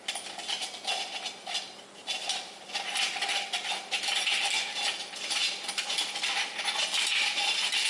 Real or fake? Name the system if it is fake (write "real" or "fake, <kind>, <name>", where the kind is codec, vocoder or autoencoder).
real